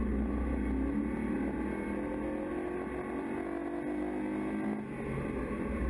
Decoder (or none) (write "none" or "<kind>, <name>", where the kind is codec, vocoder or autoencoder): none